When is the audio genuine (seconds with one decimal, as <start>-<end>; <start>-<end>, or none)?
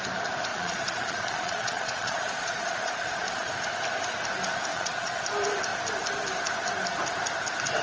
0.0-0.5; 3.5-4.7; 5.3-7.8